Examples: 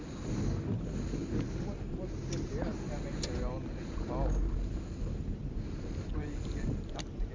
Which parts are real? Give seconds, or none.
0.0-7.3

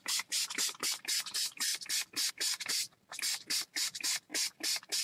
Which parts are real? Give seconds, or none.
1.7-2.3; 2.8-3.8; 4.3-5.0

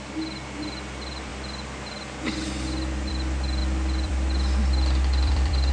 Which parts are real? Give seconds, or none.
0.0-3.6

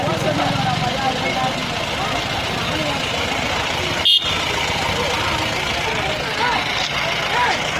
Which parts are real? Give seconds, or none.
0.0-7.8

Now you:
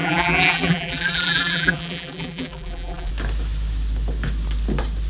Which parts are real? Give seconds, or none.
3.1-5.1

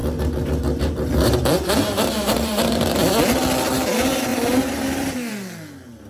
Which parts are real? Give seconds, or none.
2.9-4.3; 5.3-6.1

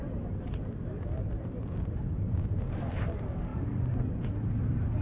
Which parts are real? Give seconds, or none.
3.0-5.0